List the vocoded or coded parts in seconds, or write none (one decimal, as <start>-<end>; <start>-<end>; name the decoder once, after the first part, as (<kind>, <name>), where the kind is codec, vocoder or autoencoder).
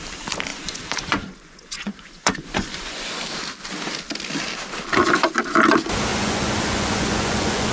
0.5-3.1 (vocoder, Vocos); 6.1-7.7